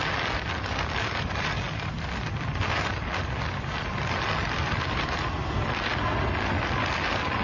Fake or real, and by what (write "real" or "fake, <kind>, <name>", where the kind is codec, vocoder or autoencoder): real